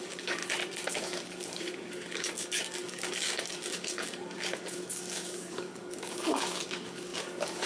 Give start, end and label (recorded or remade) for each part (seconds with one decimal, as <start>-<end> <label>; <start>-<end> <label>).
0.0-0.4 remade; 0.4-0.9 recorded; 0.9-7.7 remade